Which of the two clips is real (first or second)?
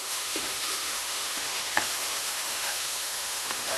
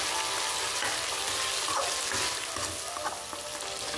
second